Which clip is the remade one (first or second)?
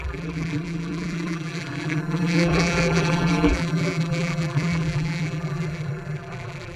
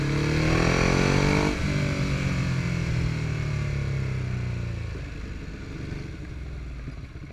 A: first